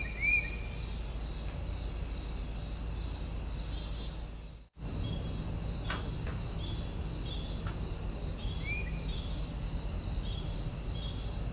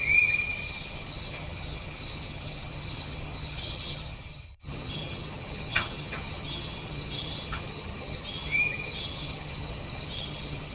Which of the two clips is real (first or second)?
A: first